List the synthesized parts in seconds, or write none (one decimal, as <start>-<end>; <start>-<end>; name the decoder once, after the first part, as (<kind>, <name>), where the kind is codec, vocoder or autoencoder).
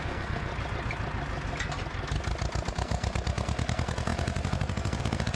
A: 0.0-0.5 (codec, SNAC); 2.7-5.4